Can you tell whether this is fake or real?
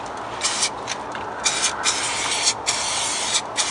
real